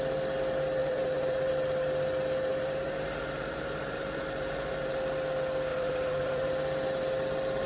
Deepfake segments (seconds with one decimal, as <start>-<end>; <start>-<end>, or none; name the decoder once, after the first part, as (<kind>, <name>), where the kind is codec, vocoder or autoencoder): 0.8-1.5 (vocoder, BigVGAN v2); 2.5-5.0; 5.7-6.5